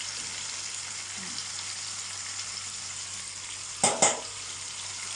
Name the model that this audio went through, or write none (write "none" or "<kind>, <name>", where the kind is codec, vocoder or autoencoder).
none